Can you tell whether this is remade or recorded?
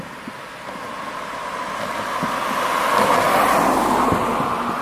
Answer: recorded